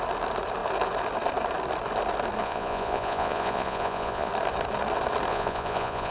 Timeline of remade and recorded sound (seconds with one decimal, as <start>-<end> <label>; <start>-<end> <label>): 0.0-2.4 recorded; 2.4-4.3 remade; 4.3-5.3 recorded; 5.3-6.1 remade